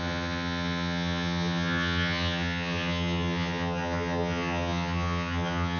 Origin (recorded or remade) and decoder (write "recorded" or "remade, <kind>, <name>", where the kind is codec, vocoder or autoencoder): remade, vocoder, HiFi-GAN